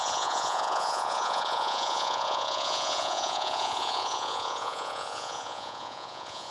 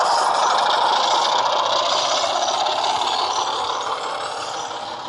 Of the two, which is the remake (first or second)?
first